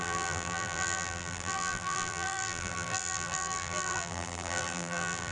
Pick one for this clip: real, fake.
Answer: fake